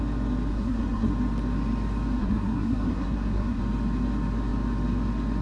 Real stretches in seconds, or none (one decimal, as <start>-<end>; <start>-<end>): 0.0-0.5; 1.1-2.2; 3.6-5.4